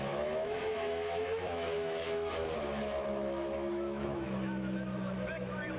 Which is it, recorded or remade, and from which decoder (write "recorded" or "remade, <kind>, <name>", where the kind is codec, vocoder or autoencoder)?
remade, autoencoder, DAC-VAE